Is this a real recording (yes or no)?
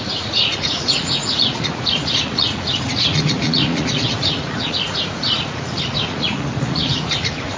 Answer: no